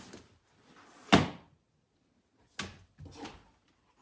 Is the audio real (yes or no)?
yes